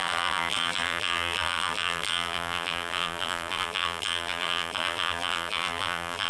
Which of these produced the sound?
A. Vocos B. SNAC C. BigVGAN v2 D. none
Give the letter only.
C